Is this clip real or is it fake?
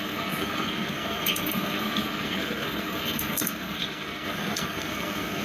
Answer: fake